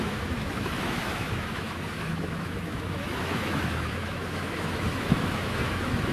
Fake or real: fake